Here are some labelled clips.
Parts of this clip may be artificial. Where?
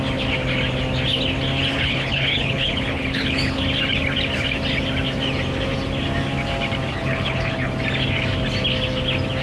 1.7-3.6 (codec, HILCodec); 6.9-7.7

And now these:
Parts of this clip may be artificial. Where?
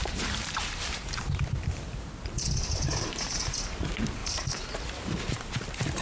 0.0-6.0 (vocoder, BigVGAN v2)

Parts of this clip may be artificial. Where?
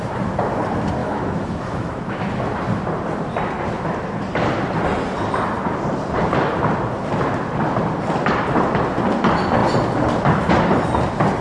1.0-2.4 (autoencoder, DAC-VAE)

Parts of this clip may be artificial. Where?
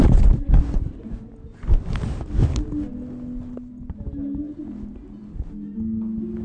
none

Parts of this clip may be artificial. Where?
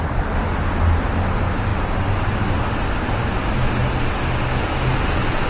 none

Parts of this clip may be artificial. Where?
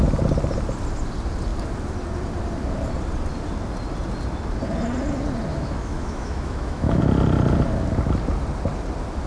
5.5-7.0 (autoencoder, DAC-VAE)